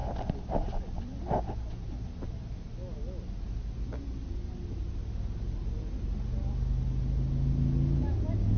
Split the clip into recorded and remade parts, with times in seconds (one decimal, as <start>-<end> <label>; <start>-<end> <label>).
0.0-8.6 recorded